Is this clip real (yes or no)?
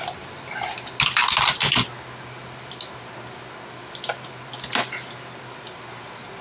yes